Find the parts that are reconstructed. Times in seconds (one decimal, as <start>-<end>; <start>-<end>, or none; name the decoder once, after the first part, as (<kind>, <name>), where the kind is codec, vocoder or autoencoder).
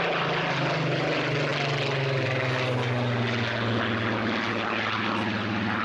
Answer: none